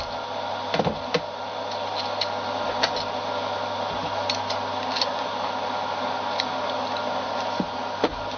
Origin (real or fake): real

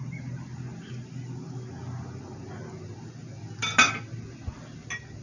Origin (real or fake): real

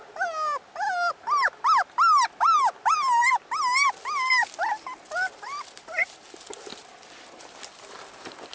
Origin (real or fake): real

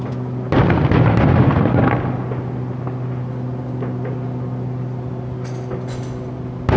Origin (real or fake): real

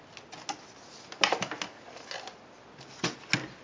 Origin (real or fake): real